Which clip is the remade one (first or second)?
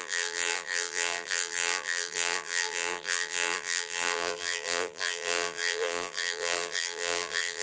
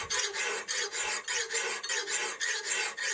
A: first